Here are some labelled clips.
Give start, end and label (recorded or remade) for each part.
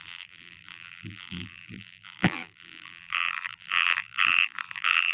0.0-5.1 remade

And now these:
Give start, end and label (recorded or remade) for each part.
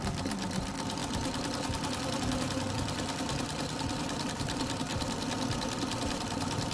0.0-1.0 remade; 1.0-2.7 recorded; 2.7-4.9 remade; 4.9-6.1 recorded; 6.1-6.7 remade